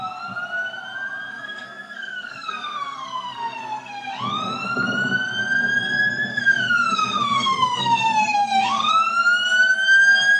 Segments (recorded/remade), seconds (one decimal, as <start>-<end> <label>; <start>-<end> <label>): 0.0-1.3 recorded; 1.3-4.1 remade; 4.1-6.3 recorded; 6.3-8.9 remade; 8.9-10.4 recorded